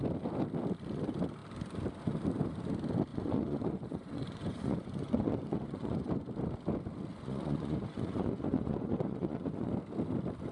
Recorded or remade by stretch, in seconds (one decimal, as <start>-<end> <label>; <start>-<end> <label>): 0.0-3.1 recorded; 3.1-6.1 remade; 6.1-7.1 recorded; 7.1-9.7 remade; 9.7-10.5 recorded